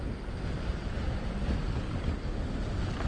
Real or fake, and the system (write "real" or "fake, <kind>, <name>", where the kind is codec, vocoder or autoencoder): real